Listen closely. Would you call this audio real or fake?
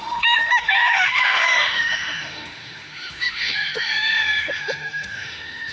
fake